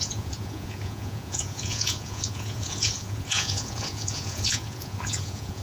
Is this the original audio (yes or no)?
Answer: no